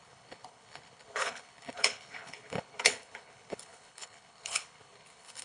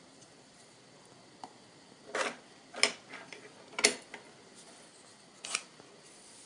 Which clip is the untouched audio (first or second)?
second